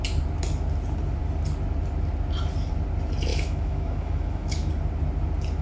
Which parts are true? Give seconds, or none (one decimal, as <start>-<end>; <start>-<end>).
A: 0.0-3.3; 4.7-5.6